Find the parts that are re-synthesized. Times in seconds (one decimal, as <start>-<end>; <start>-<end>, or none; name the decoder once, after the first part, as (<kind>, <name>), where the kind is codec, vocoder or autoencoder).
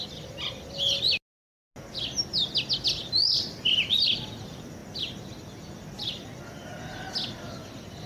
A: none